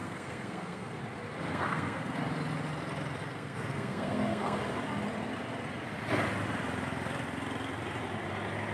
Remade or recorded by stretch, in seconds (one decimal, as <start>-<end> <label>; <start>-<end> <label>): 0.0-1.0 remade; 1.0-1.5 recorded; 1.5-2.2 remade; 2.2-3.2 recorded; 3.2-4.6 remade; 4.6-8.7 recorded